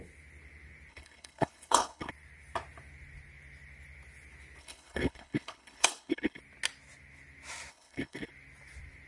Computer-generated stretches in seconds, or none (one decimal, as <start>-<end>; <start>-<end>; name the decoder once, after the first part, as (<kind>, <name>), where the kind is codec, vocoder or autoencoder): 0.9-2.1 (codec, HILCodec); 4.6-6.4; 7.7-8.3